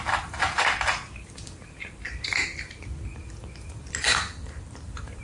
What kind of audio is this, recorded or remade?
remade